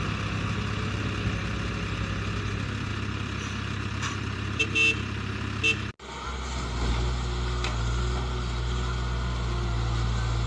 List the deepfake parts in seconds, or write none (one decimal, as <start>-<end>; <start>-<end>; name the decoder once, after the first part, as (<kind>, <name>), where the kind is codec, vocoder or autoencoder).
2.9-4.6 (vocoder, BigVGAN v2)